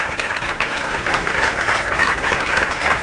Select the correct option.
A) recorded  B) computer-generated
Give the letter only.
B